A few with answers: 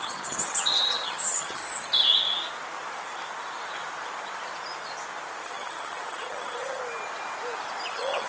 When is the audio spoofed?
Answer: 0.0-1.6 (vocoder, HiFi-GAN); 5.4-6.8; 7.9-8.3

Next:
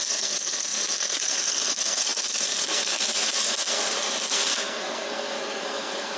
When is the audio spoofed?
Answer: 0.0-6.2 (codec, SNAC)

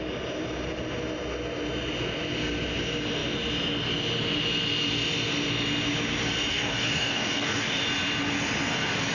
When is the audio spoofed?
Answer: 6.5-7.8 (codec, DAC)

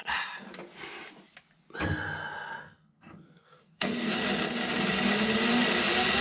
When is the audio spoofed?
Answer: 2.6-4.1 (codec, SNAC)

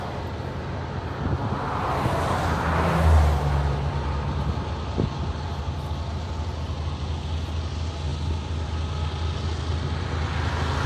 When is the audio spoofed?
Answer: none

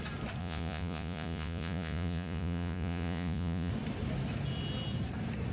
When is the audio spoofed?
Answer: 0.4-3.7 (vocoder, Vocos)

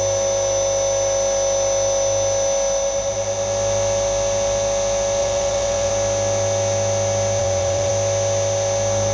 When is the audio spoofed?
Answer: 5.2-5.9 (vocoder, Vocos); 7.4-7.9

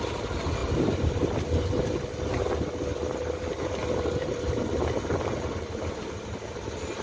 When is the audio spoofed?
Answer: none